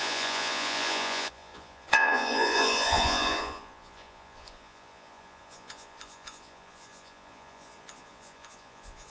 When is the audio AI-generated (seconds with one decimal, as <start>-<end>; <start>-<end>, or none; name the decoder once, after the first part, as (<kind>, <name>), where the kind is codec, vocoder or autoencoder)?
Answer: 0.0-9.1 (vocoder, Vocos)